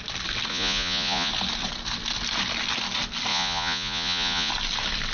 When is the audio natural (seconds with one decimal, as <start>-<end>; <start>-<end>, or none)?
0.0-0.5; 1.3-3.3; 4.5-5.1